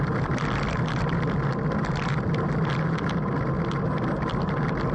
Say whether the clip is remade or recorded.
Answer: recorded